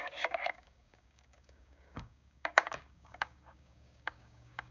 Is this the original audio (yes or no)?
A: no